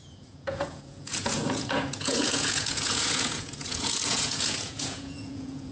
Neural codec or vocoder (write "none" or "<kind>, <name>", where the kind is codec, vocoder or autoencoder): vocoder, Vocos